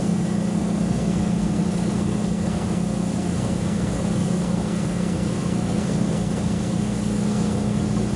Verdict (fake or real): fake